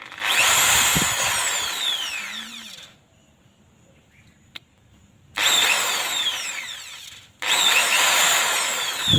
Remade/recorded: remade